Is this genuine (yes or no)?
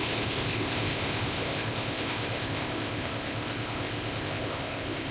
no